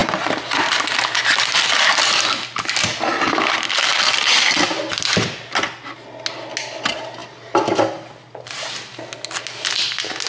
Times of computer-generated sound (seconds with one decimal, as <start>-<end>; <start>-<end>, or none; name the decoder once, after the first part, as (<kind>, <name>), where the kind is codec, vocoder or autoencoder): none